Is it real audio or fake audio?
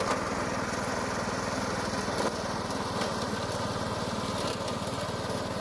real